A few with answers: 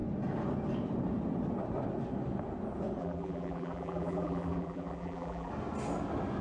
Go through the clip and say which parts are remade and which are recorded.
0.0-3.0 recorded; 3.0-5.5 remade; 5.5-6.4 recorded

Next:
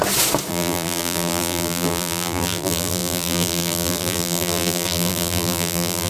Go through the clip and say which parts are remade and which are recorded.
0.0-0.5 recorded; 0.5-6.1 remade

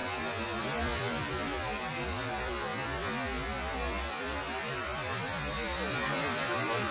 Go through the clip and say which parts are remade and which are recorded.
0.0-0.6 recorded; 0.6-2.7 remade; 2.7-4.2 recorded; 4.2-6.9 remade